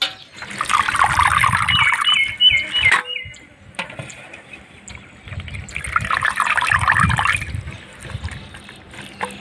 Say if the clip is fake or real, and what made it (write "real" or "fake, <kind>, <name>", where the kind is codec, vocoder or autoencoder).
real